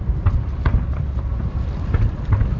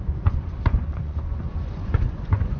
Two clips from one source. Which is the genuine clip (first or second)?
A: first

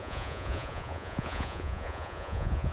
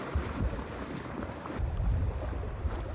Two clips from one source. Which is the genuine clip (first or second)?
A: second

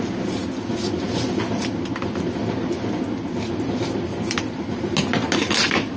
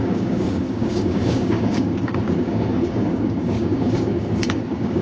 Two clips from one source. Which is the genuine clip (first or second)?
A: first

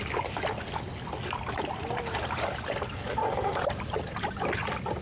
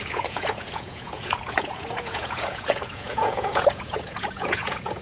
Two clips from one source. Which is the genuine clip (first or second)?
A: first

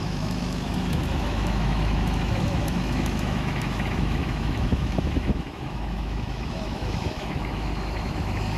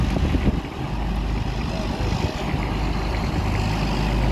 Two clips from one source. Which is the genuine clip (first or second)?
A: second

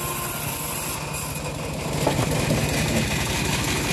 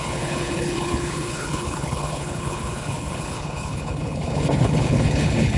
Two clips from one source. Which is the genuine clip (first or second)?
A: first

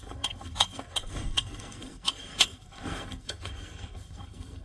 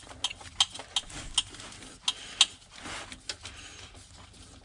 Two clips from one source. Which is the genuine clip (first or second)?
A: second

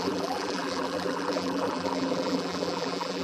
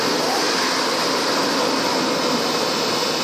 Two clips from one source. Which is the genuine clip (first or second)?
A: second